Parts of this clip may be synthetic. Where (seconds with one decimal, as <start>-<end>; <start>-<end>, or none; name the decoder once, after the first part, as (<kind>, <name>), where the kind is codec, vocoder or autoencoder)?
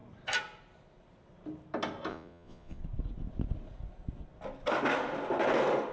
2.1-2.8 (vocoder, Vocos)